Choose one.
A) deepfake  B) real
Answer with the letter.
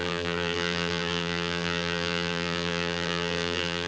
A